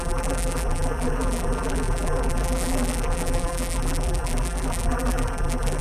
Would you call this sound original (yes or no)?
no